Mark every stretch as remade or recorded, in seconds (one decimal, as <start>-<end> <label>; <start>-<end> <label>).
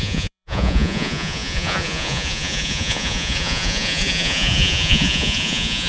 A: 0.0-5.9 remade